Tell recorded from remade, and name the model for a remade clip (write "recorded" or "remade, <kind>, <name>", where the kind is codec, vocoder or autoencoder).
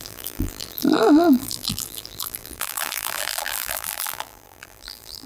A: remade, vocoder, BigVGAN v2